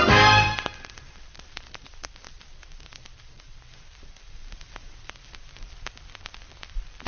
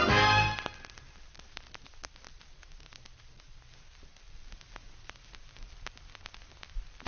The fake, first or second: first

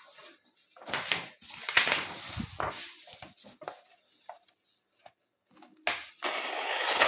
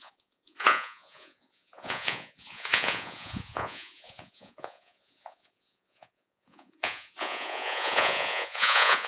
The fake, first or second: second